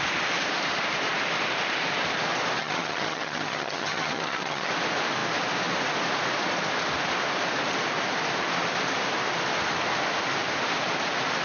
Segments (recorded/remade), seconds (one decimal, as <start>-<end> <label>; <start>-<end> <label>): 0.0-2.6 recorded; 2.6-4.7 remade; 4.7-11.4 recorded